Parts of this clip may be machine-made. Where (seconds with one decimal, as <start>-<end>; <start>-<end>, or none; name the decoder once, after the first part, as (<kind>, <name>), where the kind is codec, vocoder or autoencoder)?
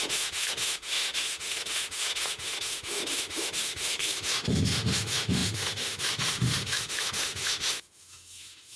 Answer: 0.0-8.8 (autoencoder, DAC-VAE)